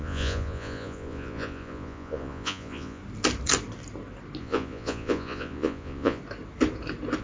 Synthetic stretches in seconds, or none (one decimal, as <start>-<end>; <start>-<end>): 0.0-3.0; 4.4-6.2